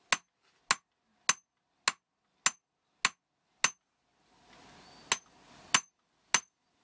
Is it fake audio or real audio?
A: real